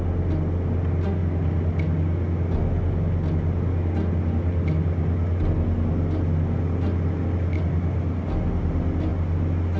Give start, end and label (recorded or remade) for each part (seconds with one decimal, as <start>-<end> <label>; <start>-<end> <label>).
0.0-9.8 recorded